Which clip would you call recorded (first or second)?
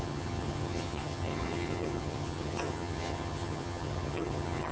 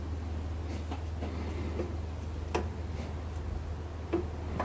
second